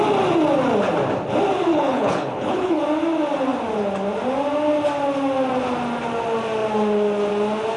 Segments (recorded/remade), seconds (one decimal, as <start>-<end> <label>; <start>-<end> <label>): 0.0-1.7 recorded; 1.7-2.8 remade; 2.8-7.8 recorded